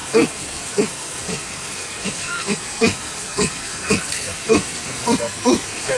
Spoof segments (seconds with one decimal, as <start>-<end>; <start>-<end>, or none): 0.0-6.0